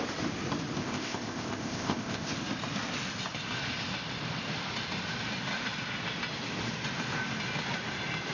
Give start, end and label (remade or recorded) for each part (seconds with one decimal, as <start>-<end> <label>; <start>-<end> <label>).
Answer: 0.0-0.8 recorded; 0.8-2.3 remade; 2.3-8.3 recorded